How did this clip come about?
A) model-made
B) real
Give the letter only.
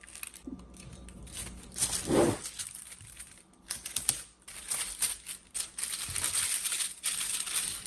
B